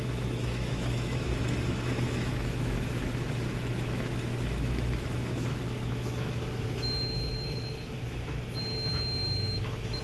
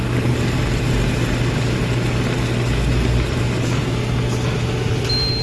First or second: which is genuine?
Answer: second